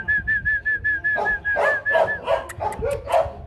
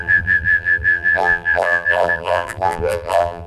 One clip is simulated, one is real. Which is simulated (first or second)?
second